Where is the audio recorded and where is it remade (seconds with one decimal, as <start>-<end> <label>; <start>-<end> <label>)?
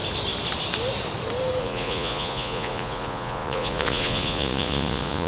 0.0-1.6 recorded; 1.6-5.3 remade